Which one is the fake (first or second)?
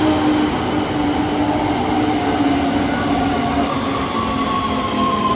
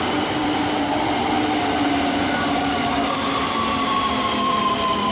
second